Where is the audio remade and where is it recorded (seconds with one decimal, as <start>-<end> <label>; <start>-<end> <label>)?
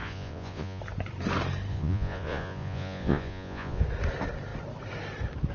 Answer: 0.0-0.8 remade; 0.8-1.7 recorded; 1.7-3.8 remade; 3.8-5.5 recorded